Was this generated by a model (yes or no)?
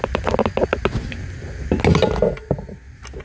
no